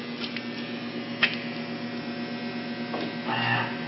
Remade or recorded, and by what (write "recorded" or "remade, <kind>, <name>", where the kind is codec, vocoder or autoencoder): recorded